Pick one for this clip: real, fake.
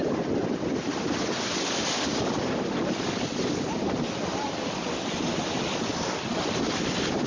real